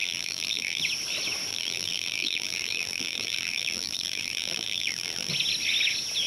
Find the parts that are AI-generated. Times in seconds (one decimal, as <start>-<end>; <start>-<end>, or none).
0.0-0.8; 1.5-5.3